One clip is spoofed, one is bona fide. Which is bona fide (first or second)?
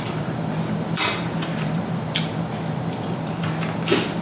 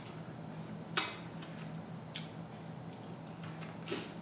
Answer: second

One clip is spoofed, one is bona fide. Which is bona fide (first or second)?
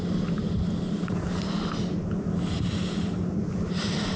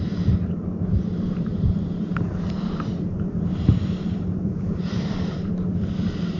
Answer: first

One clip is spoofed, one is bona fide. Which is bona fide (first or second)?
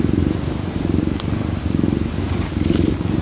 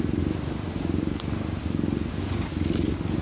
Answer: second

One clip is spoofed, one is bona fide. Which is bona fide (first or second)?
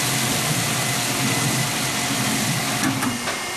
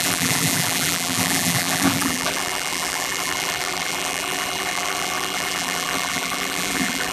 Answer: first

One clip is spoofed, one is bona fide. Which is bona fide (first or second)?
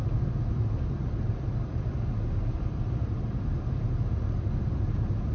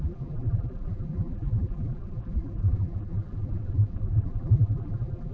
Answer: first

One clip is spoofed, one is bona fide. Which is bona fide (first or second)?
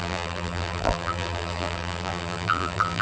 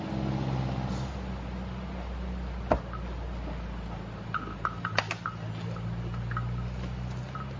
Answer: second